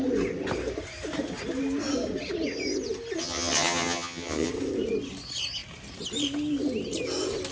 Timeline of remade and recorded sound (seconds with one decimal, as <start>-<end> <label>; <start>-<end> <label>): 0.0-3.2 recorded; 3.2-4.5 remade; 4.5-7.5 recorded